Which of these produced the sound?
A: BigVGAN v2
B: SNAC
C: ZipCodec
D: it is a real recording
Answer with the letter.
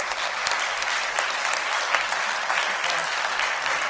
D